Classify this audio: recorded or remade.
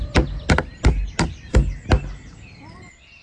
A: recorded